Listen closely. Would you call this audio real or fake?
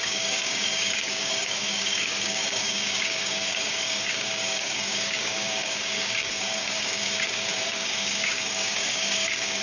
fake